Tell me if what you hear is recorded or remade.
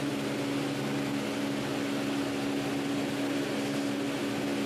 recorded